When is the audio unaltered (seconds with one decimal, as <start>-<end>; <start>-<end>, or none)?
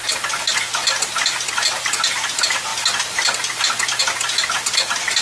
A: 0.0-5.2